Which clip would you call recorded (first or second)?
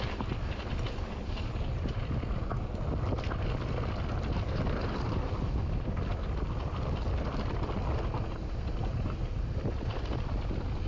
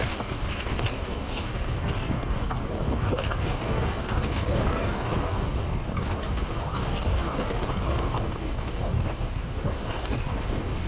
first